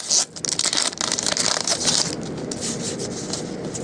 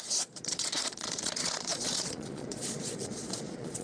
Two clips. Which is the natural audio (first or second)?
first